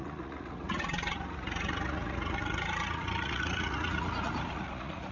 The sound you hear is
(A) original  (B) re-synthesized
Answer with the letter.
B